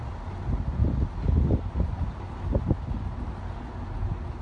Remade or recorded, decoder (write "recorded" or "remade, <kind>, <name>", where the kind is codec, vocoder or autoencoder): recorded